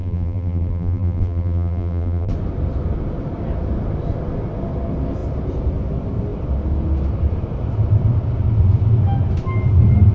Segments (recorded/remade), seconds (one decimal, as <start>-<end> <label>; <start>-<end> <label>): 0.0-2.3 remade; 2.3-10.1 recorded